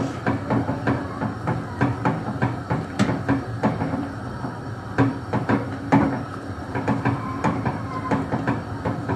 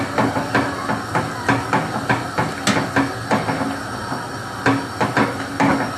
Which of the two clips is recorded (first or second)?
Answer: second